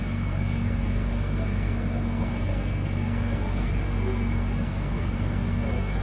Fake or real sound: fake